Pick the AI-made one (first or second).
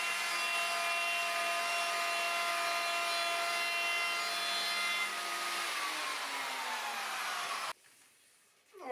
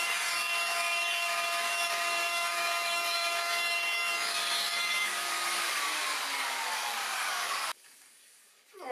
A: second